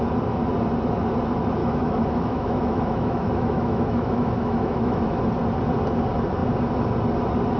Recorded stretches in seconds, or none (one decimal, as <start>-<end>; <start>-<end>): 0.0-1.6; 5.2-7.6